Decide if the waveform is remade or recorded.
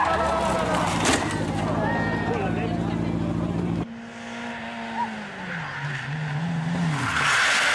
recorded